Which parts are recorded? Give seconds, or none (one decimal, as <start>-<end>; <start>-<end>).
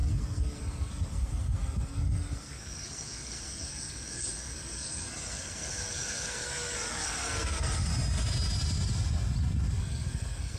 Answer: 7.9-9.8